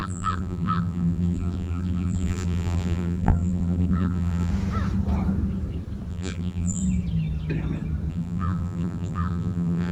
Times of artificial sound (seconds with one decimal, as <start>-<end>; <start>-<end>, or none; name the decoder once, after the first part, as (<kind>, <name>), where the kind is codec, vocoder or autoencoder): 0.0-4.5 (vocoder, BigVGAN v2); 6.1-6.8; 8.1-9.9